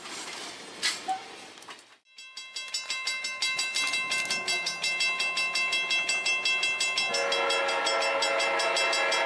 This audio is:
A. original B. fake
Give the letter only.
A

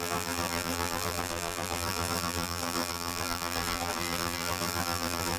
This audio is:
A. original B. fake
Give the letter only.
B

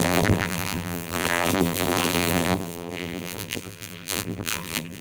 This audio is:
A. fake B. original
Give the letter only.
A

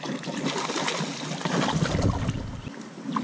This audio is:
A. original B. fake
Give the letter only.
A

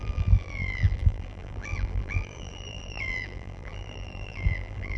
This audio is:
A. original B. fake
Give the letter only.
B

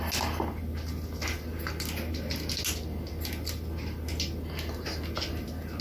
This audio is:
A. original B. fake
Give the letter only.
A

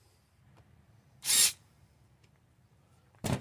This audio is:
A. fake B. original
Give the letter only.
A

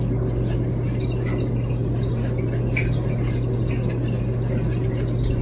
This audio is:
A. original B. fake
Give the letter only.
A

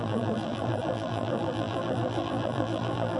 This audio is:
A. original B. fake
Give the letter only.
B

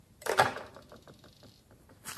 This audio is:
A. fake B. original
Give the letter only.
A